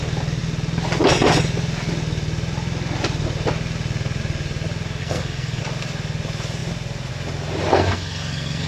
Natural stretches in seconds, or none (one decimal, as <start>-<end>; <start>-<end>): 0.0-5.0; 5.6-7.7